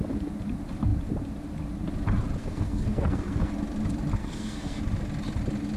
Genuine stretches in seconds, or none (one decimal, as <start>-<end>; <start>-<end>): 0.0-2.4; 3.5-4.2; 4.8-5.8